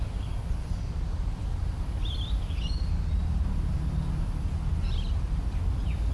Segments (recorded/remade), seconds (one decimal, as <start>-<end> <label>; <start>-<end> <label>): 0.0-6.1 recorded